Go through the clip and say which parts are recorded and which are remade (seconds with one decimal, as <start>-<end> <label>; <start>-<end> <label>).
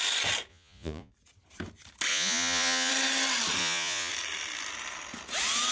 0.0-0.5 recorded; 0.5-1.1 remade; 1.1-2.1 recorded; 2.1-2.9 remade; 2.9-3.6 recorded; 3.6-4.1 remade; 4.1-5.7 recorded